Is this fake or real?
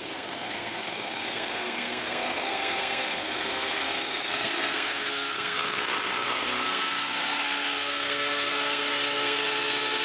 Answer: fake